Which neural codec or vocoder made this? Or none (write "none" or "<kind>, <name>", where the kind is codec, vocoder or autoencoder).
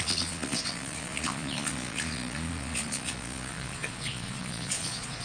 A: vocoder, Vocos